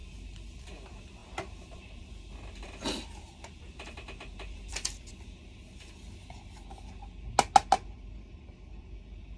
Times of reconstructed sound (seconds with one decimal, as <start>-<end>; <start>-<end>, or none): 1.2-5.1